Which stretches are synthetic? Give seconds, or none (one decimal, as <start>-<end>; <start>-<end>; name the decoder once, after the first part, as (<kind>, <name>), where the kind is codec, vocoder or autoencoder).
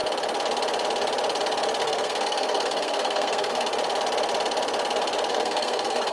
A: 1.8-3.7 (codec, SNAC); 5.3-6.1